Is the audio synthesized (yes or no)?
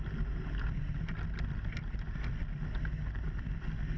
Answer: no